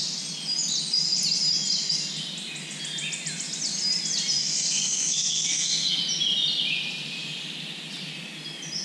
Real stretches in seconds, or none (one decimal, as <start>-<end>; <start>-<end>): 0.0-4.4; 6.0-8.8